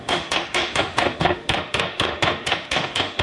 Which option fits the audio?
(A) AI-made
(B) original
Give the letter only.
A